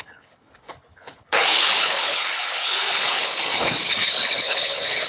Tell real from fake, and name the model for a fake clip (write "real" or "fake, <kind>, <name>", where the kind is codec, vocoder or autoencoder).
fake, codec, HILCodec